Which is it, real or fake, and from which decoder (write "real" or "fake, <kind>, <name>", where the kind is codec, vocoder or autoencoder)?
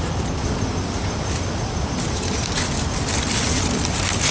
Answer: real